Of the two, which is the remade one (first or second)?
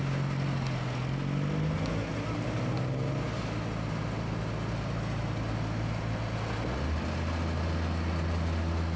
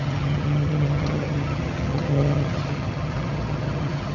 second